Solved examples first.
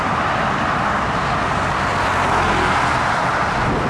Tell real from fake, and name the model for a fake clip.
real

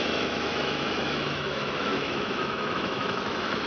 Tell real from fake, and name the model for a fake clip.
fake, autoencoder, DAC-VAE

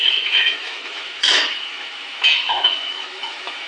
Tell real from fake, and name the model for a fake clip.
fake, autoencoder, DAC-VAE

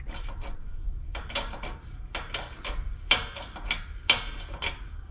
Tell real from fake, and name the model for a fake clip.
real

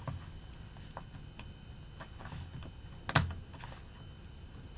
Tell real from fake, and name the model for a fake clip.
real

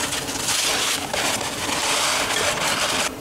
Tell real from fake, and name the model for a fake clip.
real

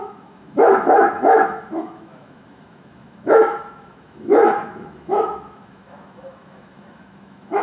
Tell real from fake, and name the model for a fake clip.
fake, autoencoder, DAC-VAE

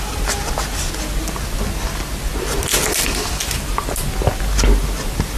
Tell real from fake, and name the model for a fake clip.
real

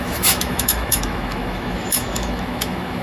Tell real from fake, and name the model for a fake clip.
fake, autoencoder, DAC-VAE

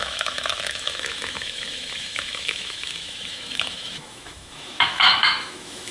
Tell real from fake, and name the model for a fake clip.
fake, autoencoder, DAC-VAE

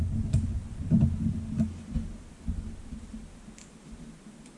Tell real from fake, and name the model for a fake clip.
real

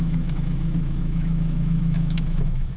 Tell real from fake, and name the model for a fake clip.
fake, autoencoder, DAC-VAE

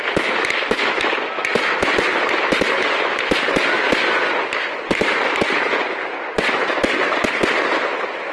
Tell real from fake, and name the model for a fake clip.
real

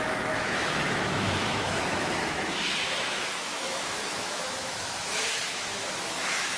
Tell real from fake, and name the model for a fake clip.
fake, autoencoder, DAC-VAE